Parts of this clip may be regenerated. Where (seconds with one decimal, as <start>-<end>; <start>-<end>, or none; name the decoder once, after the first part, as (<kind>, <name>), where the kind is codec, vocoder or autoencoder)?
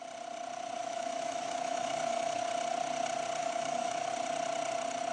0.8-2.4 (autoencoder, DAC-VAE); 3.4-4.1